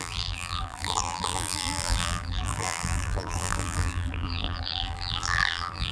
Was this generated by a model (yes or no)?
yes